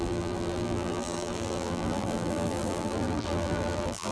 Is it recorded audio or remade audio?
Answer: remade